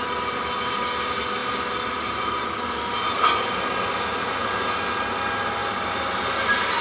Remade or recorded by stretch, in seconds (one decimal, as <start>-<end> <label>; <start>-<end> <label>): 0.0-6.8 recorded